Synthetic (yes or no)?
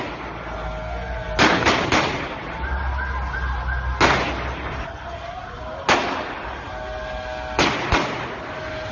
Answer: no